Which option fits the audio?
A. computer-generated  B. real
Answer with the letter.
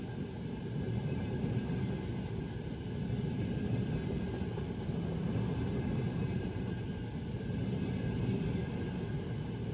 B